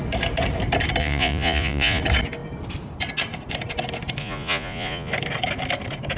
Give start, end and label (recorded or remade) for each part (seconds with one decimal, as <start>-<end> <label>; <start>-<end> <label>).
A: 0.0-1.0 recorded; 1.0-2.0 remade; 2.0-4.2 recorded; 4.2-5.1 remade; 5.1-6.2 recorded